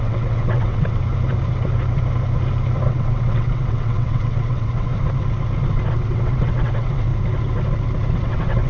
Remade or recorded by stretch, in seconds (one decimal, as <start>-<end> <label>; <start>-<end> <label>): 0.0-1.0 remade; 1.0-2.9 recorded; 2.9-4.9 remade; 4.9-5.9 recorded; 5.9-7.1 remade; 7.1-8.1 recorded; 8.1-8.7 remade